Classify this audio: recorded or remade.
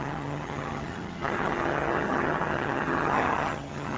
remade